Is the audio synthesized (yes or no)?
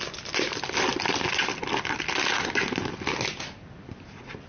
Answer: no